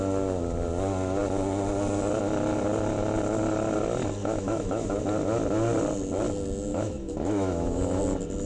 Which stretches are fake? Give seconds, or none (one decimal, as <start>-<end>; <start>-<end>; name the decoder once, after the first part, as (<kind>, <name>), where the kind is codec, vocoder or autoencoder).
4.2-5.0 (autoencoder, DAC-VAE); 6.7-8.0